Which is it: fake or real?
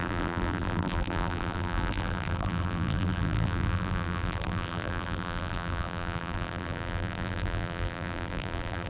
fake